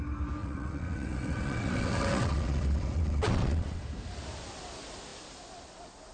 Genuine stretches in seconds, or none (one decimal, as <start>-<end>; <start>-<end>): 0.0-0.4; 3.8-6.1